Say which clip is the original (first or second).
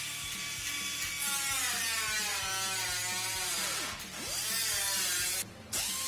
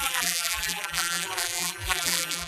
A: first